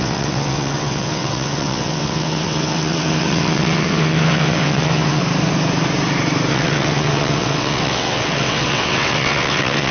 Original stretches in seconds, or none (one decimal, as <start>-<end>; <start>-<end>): 5.2-6.5